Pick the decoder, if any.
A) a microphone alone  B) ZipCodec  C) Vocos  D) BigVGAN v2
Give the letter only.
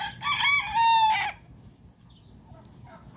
A